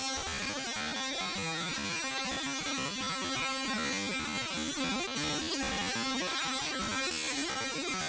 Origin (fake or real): real